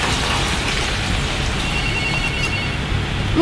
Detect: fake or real real